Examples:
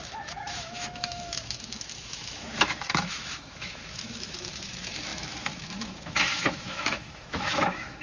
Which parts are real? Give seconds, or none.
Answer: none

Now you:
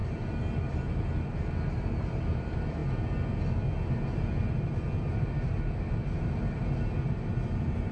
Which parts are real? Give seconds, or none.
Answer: 0.0-7.9

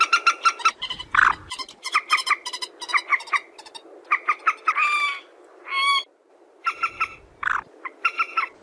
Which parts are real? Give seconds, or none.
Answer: 0.0-8.6

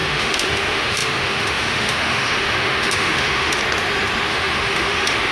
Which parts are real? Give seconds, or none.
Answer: 3.6-4.3

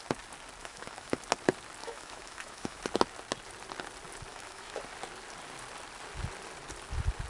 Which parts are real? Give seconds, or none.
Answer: 0.0-0.6; 1.2-1.8; 2.8-4.3; 4.8-7.3

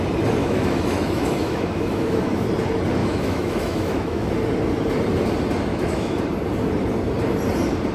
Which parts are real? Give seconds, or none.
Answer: 0.0-0.4; 2.5-3.0; 4.3-5.7; 6.2-7.9